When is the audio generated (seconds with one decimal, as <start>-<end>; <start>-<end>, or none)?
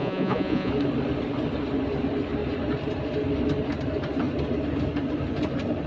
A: 0.0-0.7